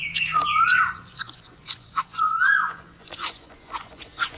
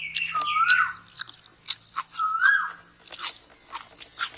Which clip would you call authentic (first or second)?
second